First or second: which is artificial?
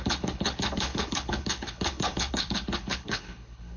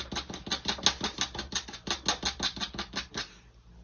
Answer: first